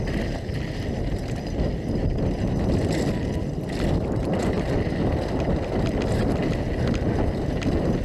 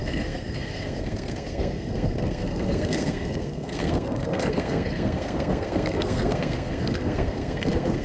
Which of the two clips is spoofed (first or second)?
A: second